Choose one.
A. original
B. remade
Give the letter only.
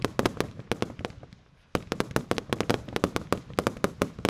A